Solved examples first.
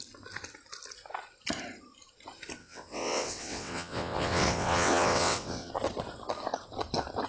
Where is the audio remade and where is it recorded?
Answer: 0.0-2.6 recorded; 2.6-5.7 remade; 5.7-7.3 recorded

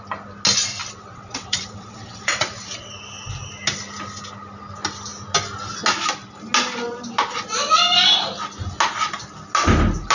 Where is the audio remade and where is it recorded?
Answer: 0.0-0.8 recorded; 0.8-2.9 remade; 2.9-10.1 recorded

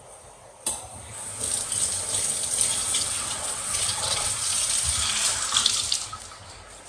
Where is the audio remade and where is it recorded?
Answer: 0.0-2.8 recorded; 2.8-4.7 remade; 4.7-6.9 recorded

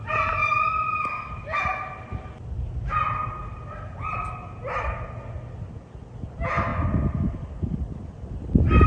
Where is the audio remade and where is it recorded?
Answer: 0.0-8.9 recorded